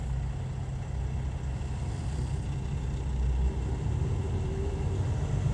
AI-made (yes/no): no